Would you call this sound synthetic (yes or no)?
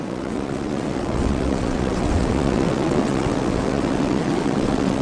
yes